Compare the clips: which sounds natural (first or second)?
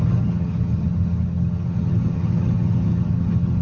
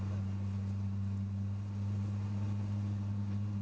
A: second